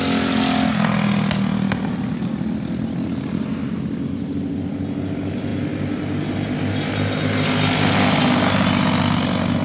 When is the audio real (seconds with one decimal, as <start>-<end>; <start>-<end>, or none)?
0.0-9.6